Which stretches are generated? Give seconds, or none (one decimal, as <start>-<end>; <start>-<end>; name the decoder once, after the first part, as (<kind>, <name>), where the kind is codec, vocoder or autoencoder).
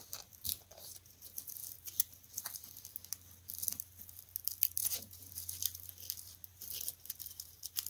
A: 4.8-5.3 (vocoder, Vocos)